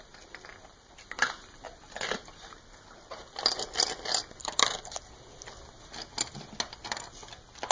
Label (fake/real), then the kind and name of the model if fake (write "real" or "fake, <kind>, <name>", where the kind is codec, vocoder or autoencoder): real